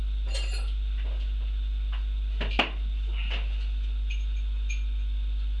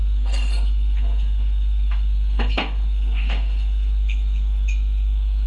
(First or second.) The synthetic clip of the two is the second